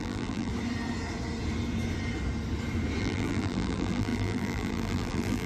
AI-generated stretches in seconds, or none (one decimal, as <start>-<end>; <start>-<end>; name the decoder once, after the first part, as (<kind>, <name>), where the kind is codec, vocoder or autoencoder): 0.0-0.5 (vocoder, BigVGAN v2); 3.0-5.5